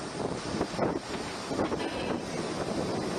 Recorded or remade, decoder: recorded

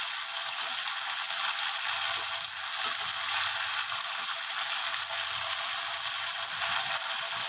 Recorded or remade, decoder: recorded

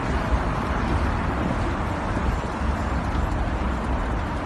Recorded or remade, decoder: remade, vocoder, BigVGAN v2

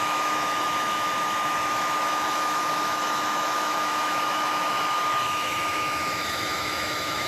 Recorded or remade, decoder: remade, autoencoder, DAC-VAE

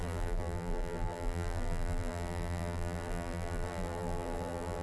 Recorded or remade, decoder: remade, vocoder, BigVGAN v2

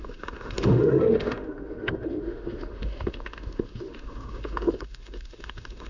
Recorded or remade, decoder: remade, autoencoder, DAC-VAE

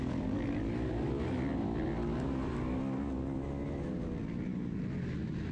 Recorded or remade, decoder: recorded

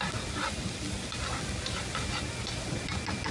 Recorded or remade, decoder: recorded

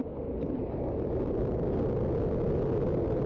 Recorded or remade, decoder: recorded